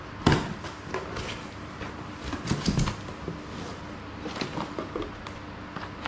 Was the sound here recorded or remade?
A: recorded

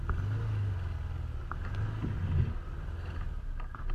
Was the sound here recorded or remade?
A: recorded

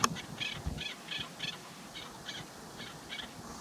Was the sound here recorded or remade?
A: recorded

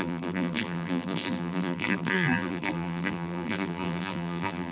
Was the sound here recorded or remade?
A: remade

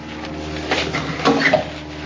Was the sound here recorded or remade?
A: recorded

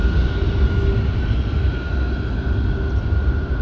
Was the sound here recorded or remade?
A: recorded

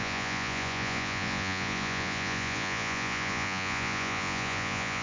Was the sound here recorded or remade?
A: remade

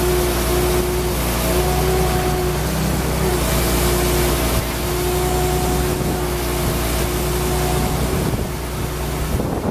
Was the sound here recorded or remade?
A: recorded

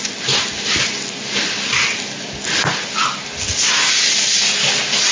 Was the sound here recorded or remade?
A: recorded